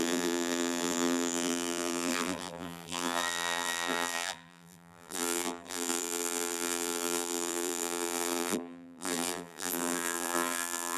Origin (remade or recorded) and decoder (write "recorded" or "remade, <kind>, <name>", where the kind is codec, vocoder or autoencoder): remade, vocoder, BigVGAN v2